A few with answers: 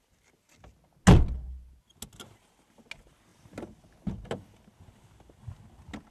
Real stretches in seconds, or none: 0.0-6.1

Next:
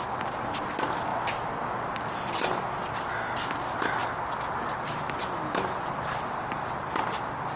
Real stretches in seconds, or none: 0.0-7.6

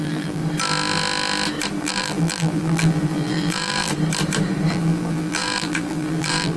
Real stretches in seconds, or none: 0.4-1.8; 3.9-4.7

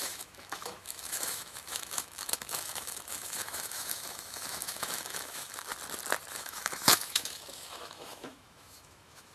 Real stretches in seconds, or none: 5.7-6.3

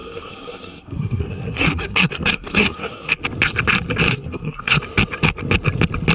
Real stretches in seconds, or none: 3.1-4.1; 4.8-6.1

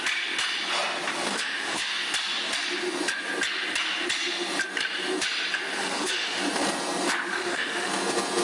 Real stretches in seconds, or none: 0.0-1.3; 1.9-5.8; 6.4-7.3; 7.9-8.4

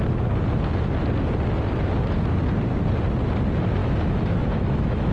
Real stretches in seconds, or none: 0.0-3.8

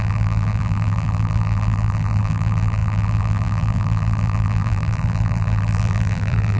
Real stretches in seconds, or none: none